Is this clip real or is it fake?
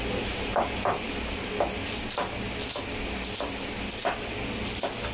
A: real